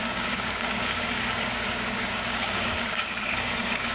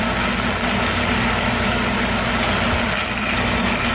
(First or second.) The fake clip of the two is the first